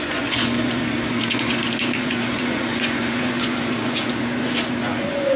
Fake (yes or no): yes